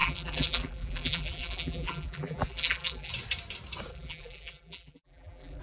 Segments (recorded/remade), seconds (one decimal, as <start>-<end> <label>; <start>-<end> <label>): 0.0-3.1 remade; 3.1-3.9 recorded; 3.9-5.6 remade